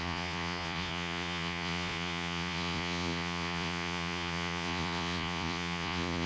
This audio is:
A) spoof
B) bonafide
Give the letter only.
A